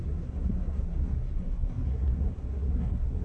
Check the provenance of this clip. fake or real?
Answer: fake